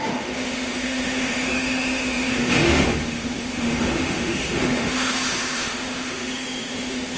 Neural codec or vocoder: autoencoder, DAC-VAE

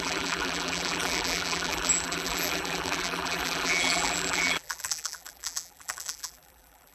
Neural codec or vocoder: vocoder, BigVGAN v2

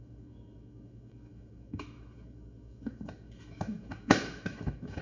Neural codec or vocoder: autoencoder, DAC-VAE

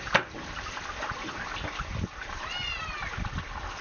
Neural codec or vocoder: none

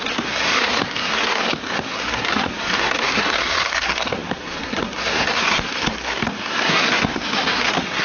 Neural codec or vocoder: codec, SNAC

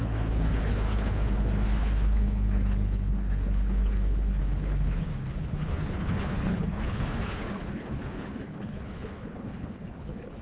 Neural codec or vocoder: codec, HILCodec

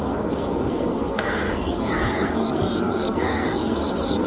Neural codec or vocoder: codec, SNAC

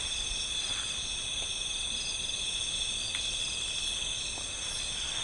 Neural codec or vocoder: none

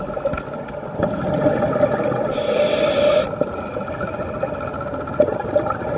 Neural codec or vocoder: none